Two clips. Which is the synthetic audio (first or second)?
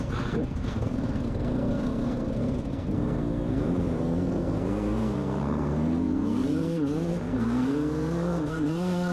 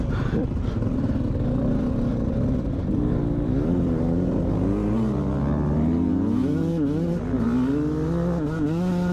first